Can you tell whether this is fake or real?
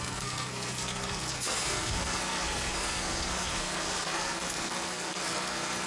fake